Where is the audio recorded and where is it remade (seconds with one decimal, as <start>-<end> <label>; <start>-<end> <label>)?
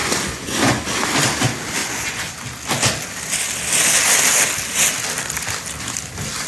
0.0-0.8 remade; 0.8-1.8 recorded; 1.8-2.3 remade; 2.3-6.5 recorded